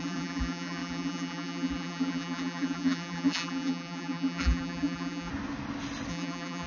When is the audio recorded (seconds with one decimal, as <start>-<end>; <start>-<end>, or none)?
5.3-6.1

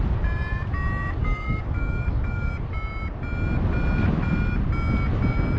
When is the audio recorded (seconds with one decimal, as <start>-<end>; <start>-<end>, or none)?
0.0-1.2; 2.5-5.6

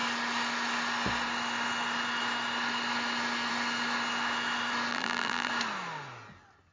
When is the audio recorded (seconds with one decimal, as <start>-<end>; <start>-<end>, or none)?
0.0-4.9; 5.5-6.7